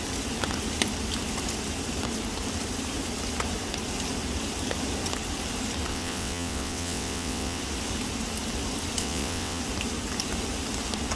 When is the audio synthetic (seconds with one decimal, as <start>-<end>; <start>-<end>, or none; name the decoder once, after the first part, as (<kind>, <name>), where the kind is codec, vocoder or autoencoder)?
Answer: 5.9-7.6 (vocoder, WaveNeXt); 9.0-9.6